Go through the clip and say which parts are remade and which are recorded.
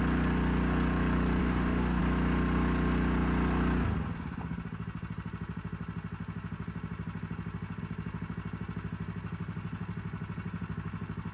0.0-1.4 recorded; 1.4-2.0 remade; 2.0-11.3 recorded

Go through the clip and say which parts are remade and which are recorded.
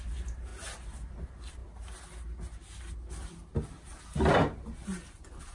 0.0-5.5 recorded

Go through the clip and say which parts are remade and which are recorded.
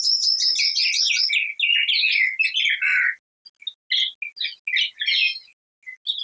0.0-6.2 recorded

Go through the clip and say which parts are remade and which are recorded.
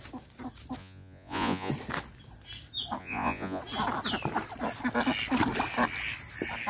0.0-0.8 recorded; 0.8-1.7 remade; 1.7-3.0 recorded; 3.0-3.6 remade; 3.6-6.7 recorded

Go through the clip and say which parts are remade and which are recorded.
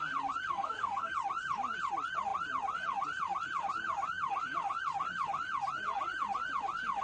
0.0-0.5 recorded; 0.5-1.1 remade; 1.1-7.0 recorded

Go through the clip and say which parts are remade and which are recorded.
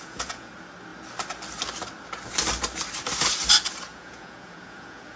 0.0-0.5 remade; 0.5-3.9 recorded; 3.9-5.2 remade